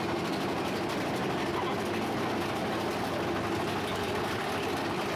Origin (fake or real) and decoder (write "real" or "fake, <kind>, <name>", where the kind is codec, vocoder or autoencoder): real